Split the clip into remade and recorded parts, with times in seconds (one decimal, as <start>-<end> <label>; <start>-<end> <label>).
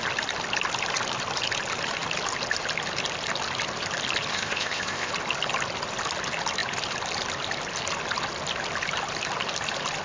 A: 0.0-4.3 recorded; 4.3-5.1 remade; 5.1-10.0 recorded